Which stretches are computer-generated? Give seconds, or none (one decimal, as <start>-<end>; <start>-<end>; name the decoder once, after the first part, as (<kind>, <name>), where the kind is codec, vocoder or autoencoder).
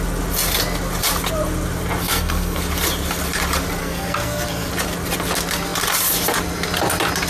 2.0-2.6 (codec, SNAC); 3.8-4.7